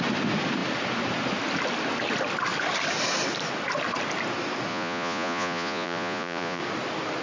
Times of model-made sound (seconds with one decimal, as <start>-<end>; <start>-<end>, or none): 4.7-6.6